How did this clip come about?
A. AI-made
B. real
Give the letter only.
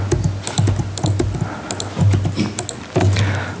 B